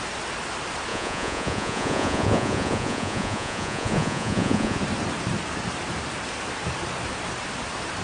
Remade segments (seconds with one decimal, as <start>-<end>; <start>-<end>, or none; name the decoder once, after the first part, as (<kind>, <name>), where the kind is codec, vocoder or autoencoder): 0.9-4.8 (vocoder, Vocos)